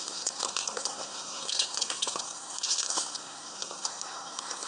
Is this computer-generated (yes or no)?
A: yes